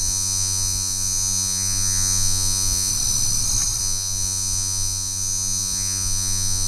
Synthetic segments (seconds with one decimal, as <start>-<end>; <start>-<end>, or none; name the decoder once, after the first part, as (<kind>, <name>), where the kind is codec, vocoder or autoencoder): 0.0-2.9 (vocoder, Vocos); 3.8-6.7